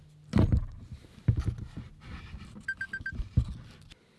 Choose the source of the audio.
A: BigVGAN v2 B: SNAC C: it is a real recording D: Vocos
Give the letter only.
C